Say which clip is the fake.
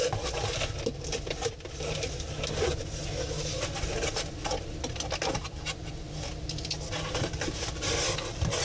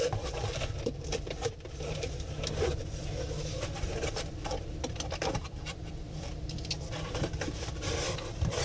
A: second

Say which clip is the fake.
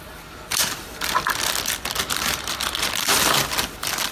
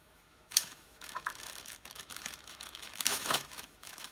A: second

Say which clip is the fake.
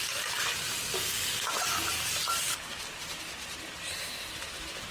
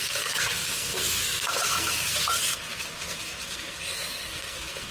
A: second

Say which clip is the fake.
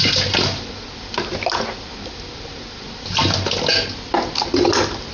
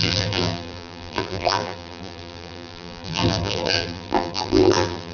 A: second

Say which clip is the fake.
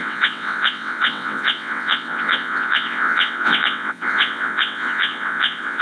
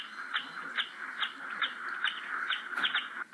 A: first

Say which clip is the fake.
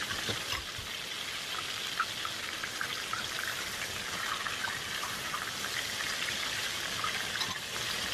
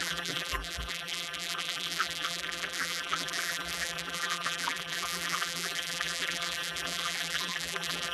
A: second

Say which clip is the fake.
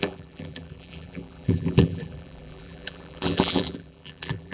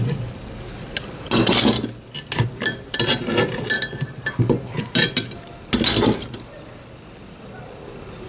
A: first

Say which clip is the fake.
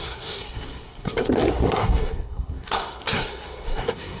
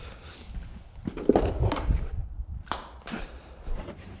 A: first